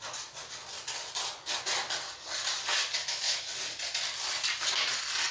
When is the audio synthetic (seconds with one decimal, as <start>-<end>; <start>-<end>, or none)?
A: 3.0-3.5